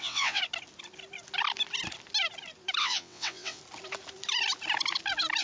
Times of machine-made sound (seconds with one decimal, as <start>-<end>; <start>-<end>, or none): 0.0-0.4; 2.8-3.6